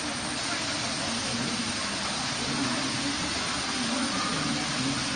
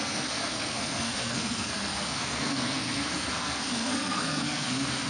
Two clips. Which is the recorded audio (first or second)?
first